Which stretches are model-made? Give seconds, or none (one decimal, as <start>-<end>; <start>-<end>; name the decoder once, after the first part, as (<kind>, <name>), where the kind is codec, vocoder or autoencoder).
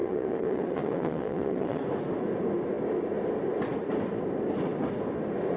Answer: 0.0-1.8 (vocoder, Vocos)